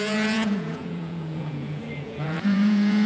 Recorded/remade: remade